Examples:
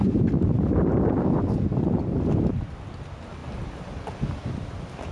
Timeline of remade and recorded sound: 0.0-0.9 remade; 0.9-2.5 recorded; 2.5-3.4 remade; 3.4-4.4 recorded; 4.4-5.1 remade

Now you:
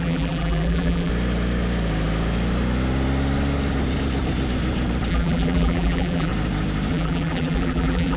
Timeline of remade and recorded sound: 0.0-1.1 remade; 1.1-5.1 recorded; 5.1-6.3 remade; 6.3-6.9 recorded; 6.9-8.2 remade

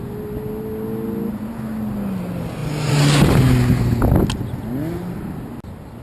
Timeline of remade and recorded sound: 0.0-6.0 recorded

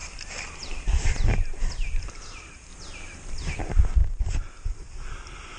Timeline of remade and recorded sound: 0.0-2.7 remade; 2.7-3.6 recorded; 3.6-5.6 remade

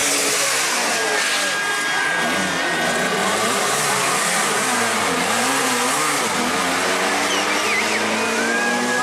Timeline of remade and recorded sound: 0.0-3.2 recorded; 3.2-5.9 remade; 5.9-9.0 recorded

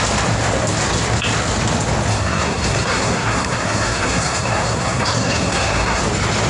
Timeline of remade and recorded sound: 0.0-2.1 recorded; 2.1-6.0 remade; 6.0-6.5 recorded

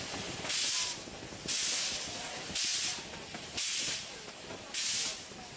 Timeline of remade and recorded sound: 0.0-5.6 recorded

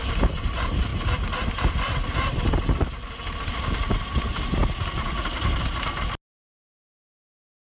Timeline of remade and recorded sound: 0.0-7.8 recorded